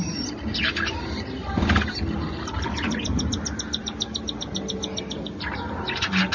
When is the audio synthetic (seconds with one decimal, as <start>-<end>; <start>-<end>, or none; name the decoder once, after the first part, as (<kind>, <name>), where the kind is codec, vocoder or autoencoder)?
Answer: none